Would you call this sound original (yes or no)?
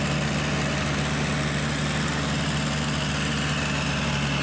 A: yes